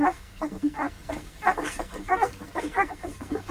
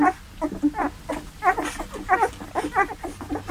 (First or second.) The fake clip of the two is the first